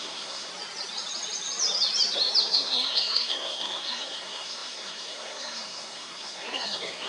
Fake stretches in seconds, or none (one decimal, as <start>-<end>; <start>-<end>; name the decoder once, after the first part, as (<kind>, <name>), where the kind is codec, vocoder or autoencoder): 0.0-0.5 (codec, SNAC); 2.4-7.1